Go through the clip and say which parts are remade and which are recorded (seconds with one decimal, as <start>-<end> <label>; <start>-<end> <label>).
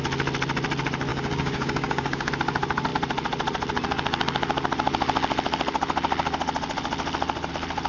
0.0-1.1 recorded; 1.1-2.3 remade; 2.3-7.9 recorded